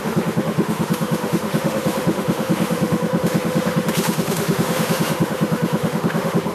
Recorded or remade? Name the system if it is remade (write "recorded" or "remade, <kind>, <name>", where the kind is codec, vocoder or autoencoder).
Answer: remade, autoencoder, DAC-VAE